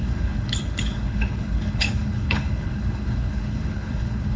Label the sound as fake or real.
fake